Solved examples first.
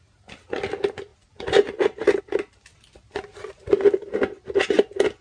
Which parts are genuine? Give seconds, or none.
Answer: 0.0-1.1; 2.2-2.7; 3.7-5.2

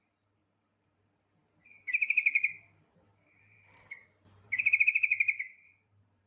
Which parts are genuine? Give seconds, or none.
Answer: none

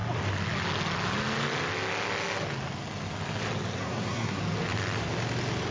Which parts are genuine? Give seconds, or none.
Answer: 0.0-3.8; 4.4-5.7